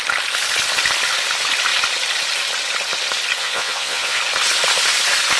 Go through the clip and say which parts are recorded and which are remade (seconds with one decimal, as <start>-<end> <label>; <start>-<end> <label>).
0.0-3.4 recorded; 3.4-4.2 remade; 4.2-5.4 recorded